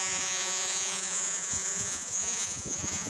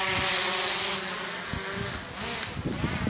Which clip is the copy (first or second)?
first